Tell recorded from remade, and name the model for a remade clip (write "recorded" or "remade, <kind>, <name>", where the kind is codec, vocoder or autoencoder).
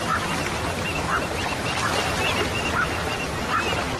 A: recorded